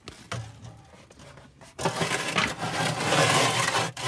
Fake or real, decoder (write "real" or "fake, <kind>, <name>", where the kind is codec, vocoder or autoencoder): real